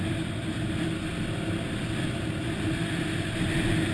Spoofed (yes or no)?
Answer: no